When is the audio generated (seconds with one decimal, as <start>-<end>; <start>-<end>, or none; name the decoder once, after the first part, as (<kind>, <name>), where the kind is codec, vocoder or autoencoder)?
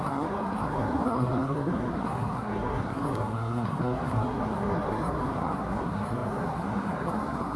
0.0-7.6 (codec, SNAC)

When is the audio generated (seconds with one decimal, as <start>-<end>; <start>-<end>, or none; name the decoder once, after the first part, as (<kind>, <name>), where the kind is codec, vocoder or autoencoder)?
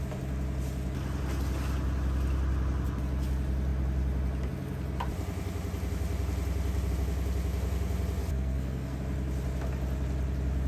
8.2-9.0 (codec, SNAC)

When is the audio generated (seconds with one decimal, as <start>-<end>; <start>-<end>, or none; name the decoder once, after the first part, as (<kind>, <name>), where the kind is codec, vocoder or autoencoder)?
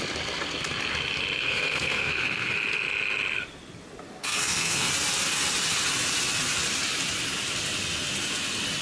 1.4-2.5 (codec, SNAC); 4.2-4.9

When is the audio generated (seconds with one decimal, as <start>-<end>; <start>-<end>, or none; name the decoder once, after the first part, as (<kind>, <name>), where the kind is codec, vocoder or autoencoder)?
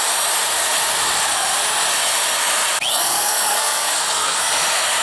2.9-4.5 (codec, SNAC)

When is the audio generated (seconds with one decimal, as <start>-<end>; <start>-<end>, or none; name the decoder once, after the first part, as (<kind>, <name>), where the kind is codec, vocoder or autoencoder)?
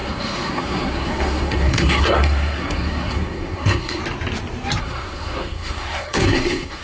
0.0-4.0 (codec, SNAC); 4.8-6.8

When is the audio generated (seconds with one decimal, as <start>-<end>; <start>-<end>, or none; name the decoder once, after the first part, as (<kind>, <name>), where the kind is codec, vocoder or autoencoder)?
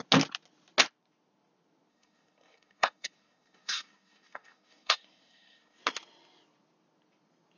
1.9-5.8 (codec, SNAC)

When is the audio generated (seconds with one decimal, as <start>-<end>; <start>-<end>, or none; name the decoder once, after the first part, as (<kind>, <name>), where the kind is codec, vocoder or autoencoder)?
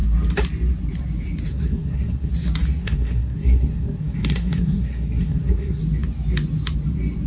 1.5-2.3 (codec, SNAC); 2.8-5.8